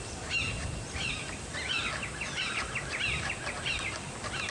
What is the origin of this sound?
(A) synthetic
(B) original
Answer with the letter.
B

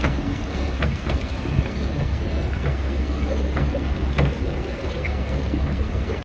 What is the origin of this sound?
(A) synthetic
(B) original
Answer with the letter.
A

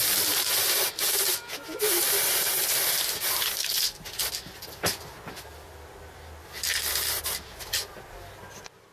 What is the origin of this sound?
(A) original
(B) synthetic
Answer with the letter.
A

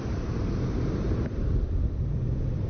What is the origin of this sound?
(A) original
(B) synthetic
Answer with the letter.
A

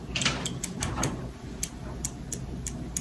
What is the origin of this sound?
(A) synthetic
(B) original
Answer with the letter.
B